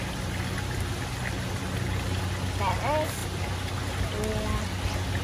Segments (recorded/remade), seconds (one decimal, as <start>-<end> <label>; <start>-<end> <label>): 0.0-5.2 recorded